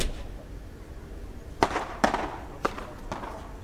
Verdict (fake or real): real